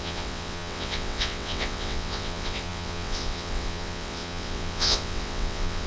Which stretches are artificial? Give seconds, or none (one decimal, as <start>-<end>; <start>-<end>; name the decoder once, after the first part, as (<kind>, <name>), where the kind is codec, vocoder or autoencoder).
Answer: 0.0-5.9 (vocoder, WaveNeXt)